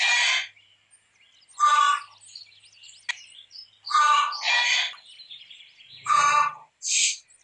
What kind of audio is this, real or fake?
real